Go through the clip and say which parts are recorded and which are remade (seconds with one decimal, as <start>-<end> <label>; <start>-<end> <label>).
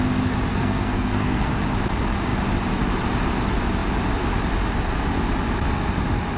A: 0.0-0.5 recorded; 0.5-1.5 remade; 1.5-6.4 recorded